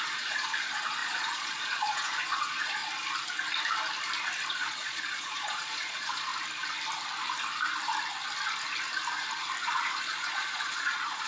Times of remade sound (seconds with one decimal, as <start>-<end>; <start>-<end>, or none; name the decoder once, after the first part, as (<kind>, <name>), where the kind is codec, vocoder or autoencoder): 0.0-2.8 (vocoder, Vocos); 4.5-6.3; 9.6-11.3